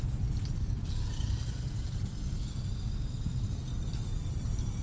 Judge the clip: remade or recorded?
recorded